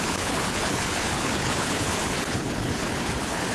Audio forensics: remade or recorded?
remade